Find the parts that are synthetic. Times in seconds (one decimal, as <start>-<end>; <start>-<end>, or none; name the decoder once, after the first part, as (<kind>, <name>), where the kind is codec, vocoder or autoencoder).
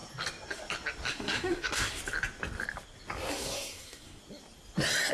1.1-2.0 (codec, SNAC); 3.3-4.2